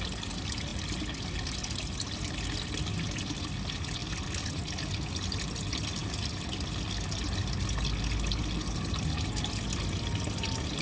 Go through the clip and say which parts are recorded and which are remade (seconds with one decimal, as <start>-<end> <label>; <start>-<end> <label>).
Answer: 0.0-10.8 recorded